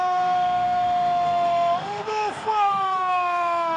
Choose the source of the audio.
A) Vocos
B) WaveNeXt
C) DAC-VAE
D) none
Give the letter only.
C